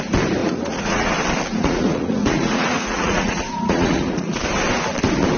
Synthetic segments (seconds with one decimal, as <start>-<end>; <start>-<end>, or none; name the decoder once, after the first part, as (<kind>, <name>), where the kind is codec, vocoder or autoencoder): 0.4-1.1 (vocoder, Vocos); 1.5-4.4